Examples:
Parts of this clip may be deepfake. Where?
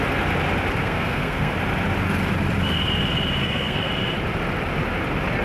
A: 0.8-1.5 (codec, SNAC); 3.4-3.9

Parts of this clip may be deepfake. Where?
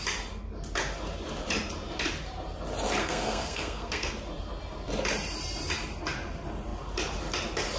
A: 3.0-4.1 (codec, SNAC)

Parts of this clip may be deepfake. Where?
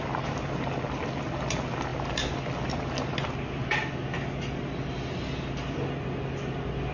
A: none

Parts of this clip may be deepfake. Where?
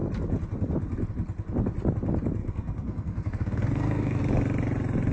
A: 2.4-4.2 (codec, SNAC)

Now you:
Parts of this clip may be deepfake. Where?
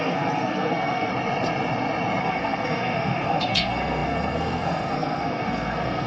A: 0.0-1.1 (codec, SNAC); 2.2-6.1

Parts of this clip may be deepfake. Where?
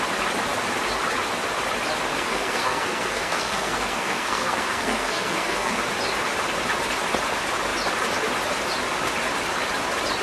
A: 2.1-5.8 (codec, SNAC)